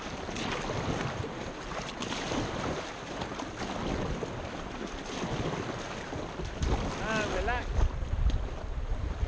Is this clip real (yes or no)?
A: yes